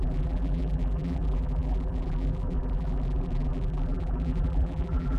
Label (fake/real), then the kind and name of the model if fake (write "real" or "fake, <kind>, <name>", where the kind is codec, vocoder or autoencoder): fake, vocoder, BigVGAN v2